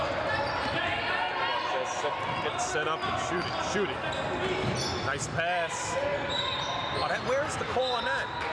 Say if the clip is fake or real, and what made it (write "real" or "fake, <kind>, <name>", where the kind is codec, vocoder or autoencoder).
real